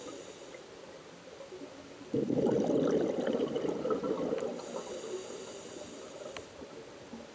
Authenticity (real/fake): real